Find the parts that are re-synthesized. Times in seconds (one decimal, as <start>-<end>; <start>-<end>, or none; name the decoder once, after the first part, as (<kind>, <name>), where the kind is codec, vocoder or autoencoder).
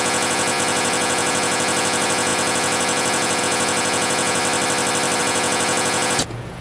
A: 0.0-4.4 (vocoder, Vocos); 5.2-6.6